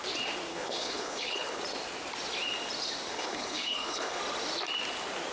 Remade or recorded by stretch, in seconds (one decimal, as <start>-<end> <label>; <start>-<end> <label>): 0.0-0.5 recorded; 0.5-1.6 remade; 1.6-3.1 recorded; 3.1-4.2 remade; 4.2-5.3 recorded